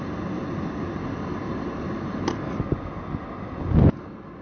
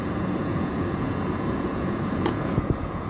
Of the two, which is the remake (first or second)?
second